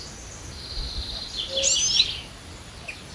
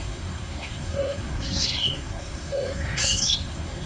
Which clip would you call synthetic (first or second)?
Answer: second